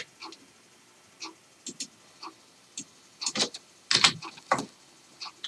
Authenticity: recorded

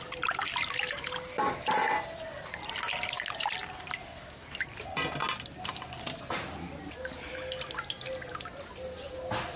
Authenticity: recorded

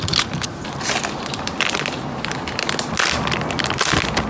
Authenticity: recorded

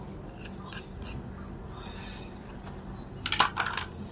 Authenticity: recorded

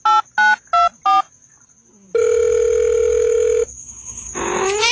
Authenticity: recorded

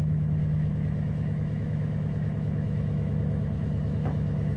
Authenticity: remade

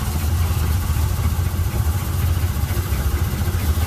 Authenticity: recorded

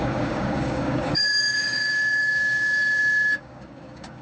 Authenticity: remade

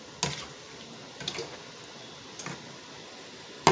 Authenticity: recorded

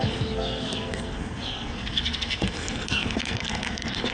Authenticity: remade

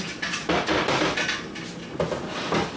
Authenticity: recorded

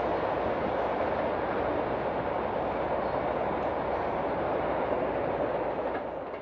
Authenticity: recorded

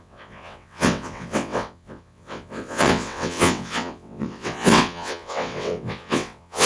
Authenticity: remade